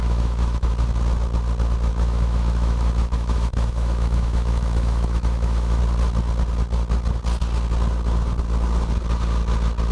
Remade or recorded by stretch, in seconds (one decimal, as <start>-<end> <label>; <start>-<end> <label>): 0.0-0.7 remade; 0.7-1.9 recorded; 1.9-5.8 remade; 5.8-9.9 recorded